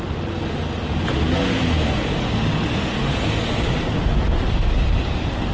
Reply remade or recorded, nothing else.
recorded